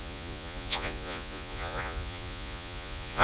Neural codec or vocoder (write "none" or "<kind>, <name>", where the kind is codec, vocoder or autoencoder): vocoder, Vocos